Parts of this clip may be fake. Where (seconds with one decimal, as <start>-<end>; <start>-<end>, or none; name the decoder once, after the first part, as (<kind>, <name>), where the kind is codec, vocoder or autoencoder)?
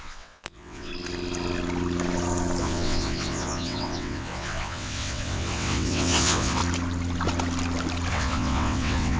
0.0-0.9 (vocoder, WaveNeXt); 2.6-6.6; 8.1-9.2